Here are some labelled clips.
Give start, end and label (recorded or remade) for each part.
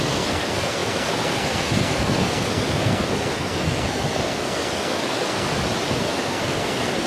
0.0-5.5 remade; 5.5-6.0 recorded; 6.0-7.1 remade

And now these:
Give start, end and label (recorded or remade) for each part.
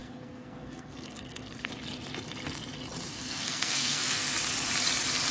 0.0-1.7 remade; 1.7-3.1 recorded; 3.1-4.3 remade; 4.3-5.3 recorded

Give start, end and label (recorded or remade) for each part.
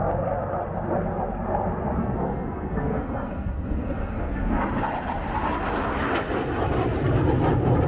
0.0-2.0 recorded; 2.0-4.6 remade; 4.6-7.9 recorded